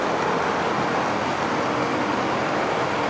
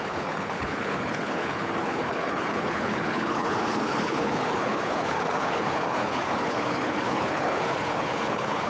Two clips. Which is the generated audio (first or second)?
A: second